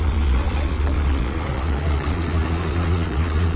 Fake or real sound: fake